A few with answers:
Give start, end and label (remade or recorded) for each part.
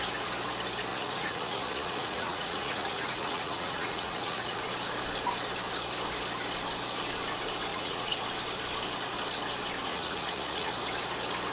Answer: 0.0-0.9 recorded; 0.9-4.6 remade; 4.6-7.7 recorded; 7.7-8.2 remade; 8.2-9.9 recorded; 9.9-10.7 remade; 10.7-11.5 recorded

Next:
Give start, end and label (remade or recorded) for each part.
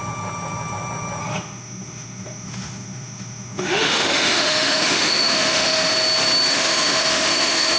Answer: 0.0-1.2 recorded; 1.2-5.9 remade; 5.9-6.5 recorded; 6.5-7.8 remade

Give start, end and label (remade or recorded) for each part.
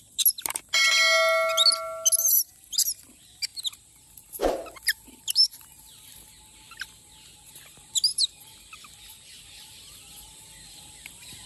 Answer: 0.0-11.5 recorded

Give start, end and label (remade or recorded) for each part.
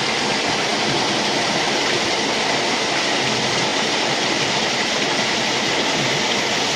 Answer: 0.0-3.7 recorded; 3.7-6.0 remade; 6.0-6.8 recorded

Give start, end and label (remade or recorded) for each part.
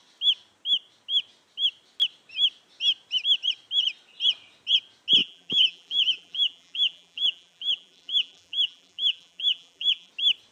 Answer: 0.0-5.2 recorded; 5.2-10.1 remade; 10.1-10.5 recorded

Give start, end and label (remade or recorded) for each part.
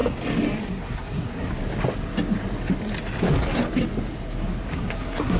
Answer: 0.0-0.7 recorded; 0.7-1.5 remade; 1.5-4.7 recorded; 4.7-5.4 remade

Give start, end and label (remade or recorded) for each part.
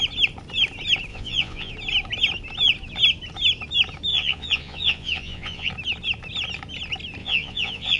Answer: 0.0-1.1 recorded; 1.1-1.7 remade; 1.7-4.1 recorded; 4.1-5.7 remade; 5.7-7.2 recorded; 7.2-8.0 remade